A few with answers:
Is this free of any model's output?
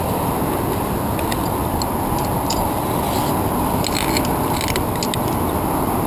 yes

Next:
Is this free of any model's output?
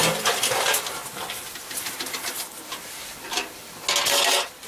yes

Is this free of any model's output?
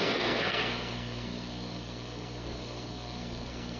no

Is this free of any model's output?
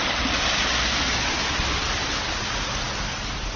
yes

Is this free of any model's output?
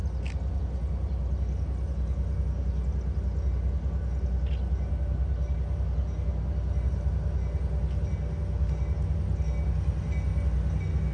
yes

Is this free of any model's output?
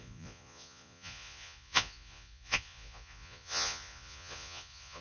no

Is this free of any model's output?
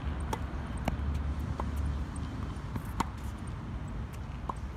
yes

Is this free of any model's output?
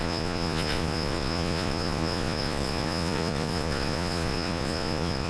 no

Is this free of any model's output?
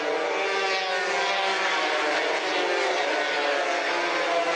yes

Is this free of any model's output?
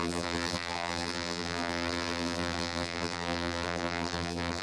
no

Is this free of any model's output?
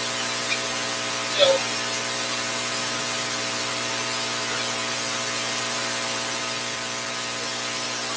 yes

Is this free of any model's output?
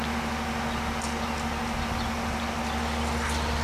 yes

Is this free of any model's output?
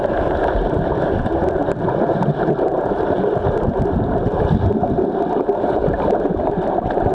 yes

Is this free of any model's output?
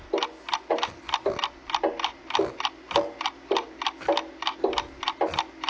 yes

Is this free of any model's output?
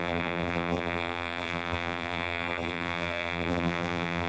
no